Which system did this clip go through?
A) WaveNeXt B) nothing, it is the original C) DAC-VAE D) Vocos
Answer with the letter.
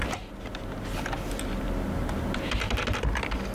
B